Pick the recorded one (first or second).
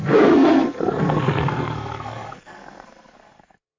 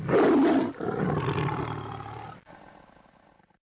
second